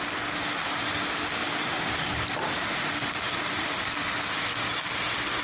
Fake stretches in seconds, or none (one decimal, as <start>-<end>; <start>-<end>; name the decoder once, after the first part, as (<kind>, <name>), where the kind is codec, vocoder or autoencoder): 1.4-3.9 (vocoder, BigVGAN v2)